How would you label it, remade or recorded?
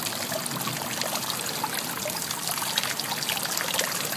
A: recorded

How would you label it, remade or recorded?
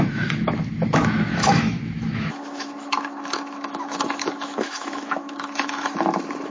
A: remade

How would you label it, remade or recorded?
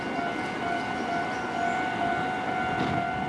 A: recorded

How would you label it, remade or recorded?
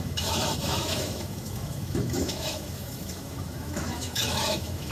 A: remade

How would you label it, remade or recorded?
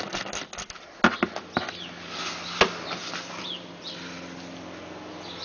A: recorded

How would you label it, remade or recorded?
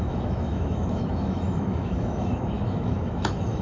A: remade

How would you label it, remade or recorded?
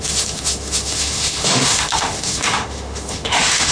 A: remade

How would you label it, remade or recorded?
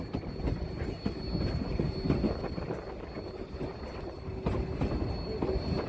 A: recorded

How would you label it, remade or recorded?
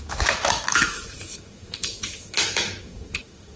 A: remade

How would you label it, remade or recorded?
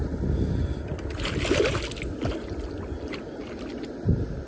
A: recorded